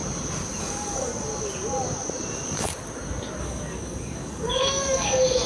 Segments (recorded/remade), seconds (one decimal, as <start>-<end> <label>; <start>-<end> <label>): 0.0-0.6 recorded; 0.6-1.1 remade; 1.1-3.4 recorded; 3.4-5.5 remade